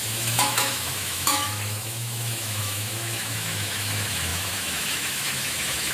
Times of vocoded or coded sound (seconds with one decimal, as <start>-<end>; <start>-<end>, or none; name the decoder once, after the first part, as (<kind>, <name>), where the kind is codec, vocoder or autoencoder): 0.0-5.9 (autoencoder, DAC-VAE)